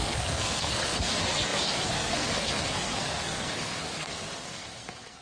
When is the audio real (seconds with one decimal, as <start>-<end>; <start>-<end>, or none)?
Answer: none

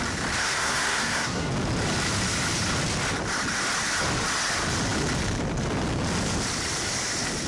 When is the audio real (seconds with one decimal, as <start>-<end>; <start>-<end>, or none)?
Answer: 0.0-0.4; 1.5-7.5

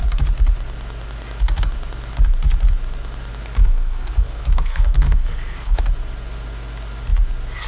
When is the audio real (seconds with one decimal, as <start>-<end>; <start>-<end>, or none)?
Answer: 0.0-3.6; 5.8-7.7

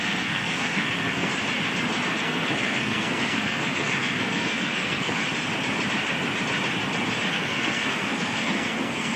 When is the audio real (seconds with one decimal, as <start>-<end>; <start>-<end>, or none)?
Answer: 1.3-2.1; 5.2-7.3